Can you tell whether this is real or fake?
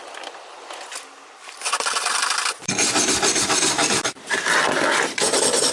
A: fake